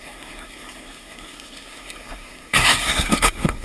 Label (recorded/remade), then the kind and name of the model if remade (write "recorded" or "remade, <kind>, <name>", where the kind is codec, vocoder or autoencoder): remade, codec, SNAC